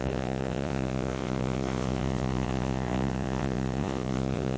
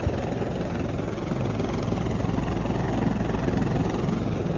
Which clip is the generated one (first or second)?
first